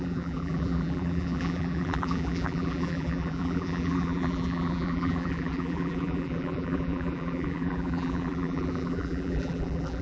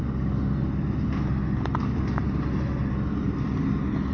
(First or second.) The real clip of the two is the second